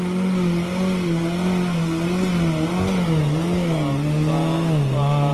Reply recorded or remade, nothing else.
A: recorded